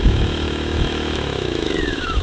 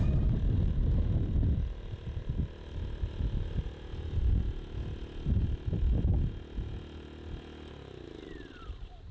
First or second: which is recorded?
second